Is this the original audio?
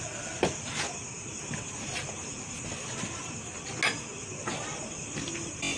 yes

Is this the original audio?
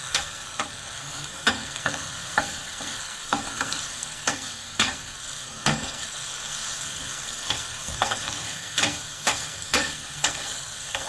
no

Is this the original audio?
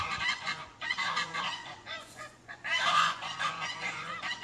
no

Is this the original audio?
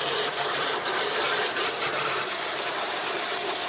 no